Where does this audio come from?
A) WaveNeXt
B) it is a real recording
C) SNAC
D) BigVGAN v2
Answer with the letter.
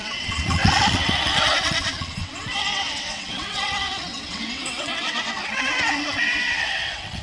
A